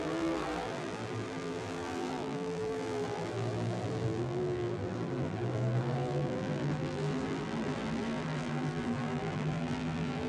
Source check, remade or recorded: remade